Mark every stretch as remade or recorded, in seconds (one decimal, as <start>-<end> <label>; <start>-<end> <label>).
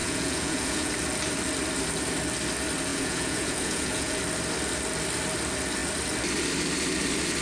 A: 0.0-0.9 remade; 0.9-2.9 recorded; 2.9-4.2 remade; 4.2-7.4 recorded